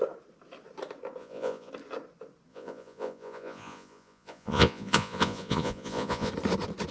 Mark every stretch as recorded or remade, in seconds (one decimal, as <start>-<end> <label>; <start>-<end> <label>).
0.0-1.2 recorded; 1.2-1.7 remade; 1.7-2.5 recorded; 2.5-6.3 remade; 6.3-6.9 recorded